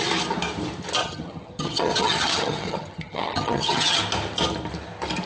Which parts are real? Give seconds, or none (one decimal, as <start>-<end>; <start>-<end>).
0.0-1.0; 4.0-5.3